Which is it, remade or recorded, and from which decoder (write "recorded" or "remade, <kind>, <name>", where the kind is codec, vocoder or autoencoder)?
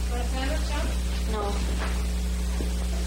recorded